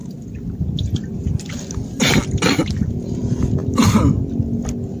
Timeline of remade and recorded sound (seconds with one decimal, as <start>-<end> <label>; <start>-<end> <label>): 0.0-2.6 recorded; 2.6-3.2 remade; 3.2-3.6 recorded; 3.6-4.1 remade; 4.1-5.0 recorded

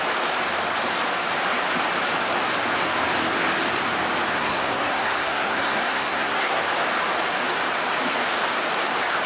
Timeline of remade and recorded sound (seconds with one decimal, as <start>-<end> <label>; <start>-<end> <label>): 0.0-4.3 recorded; 4.3-6.6 remade; 6.6-9.3 recorded